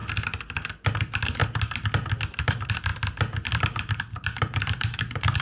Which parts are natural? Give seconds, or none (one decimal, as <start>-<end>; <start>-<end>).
0.0-0.9; 1.4-2.4; 2.9-3.5